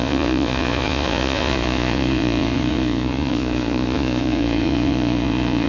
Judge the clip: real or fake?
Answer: fake